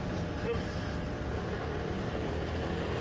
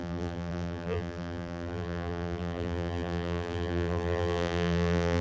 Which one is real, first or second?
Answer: first